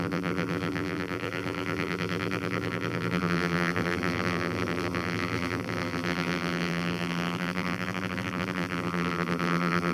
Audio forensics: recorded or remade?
remade